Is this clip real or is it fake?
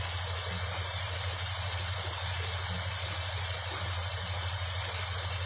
real